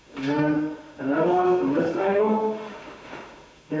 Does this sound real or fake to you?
fake